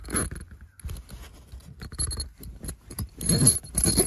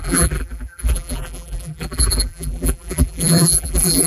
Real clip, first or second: first